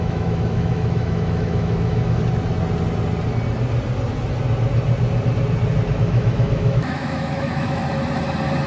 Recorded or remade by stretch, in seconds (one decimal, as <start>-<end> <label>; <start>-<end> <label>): 0.0-2.2 remade; 2.2-5.9 recorded; 5.9-7.8 remade; 7.8-8.7 recorded